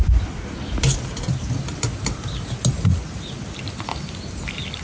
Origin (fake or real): real